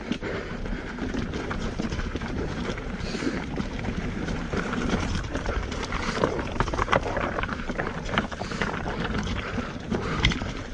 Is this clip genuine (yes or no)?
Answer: no